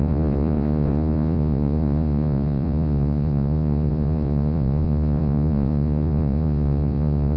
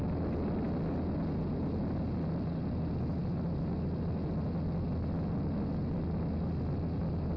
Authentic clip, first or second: second